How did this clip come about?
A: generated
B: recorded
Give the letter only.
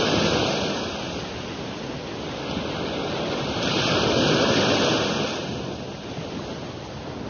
B